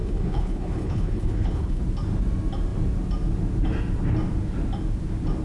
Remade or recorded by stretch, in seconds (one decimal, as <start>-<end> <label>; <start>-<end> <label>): 0.0-1.8 remade; 1.8-5.4 recorded